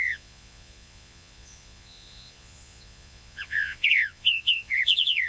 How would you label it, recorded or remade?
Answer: remade